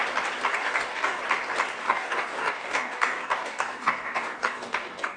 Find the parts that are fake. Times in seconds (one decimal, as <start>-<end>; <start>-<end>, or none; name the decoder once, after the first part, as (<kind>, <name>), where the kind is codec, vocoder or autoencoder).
0.5-1.2 (codec, DAC); 1.8-5.2